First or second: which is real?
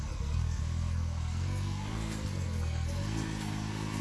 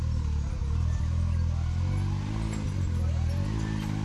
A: second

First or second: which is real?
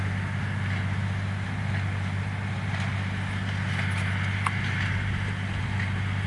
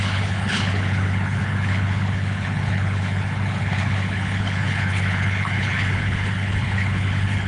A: first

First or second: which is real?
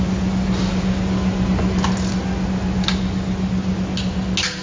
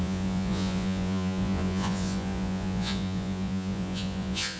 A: first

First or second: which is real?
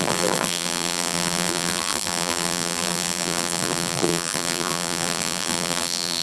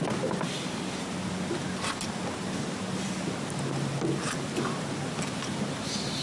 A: second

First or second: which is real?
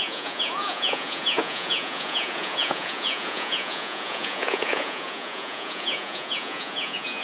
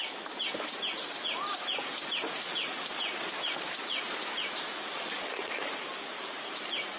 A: second